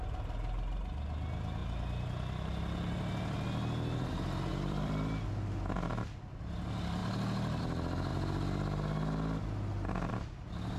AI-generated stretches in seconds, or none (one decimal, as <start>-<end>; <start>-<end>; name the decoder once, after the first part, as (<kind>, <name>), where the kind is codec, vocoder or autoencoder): 4.5-5.3 (vocoder, BigVGAN v2)